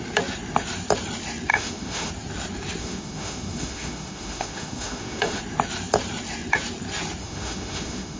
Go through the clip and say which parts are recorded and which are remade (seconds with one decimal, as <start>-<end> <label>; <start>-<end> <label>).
0.0-1.5 recorded; 1.5-2.1 remade; 2.1-2.8 recorded; 2.8-5.4 remade; 5.4-7.2 recorded; 7.2-8.2 remade